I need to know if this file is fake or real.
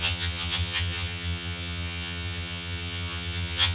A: fake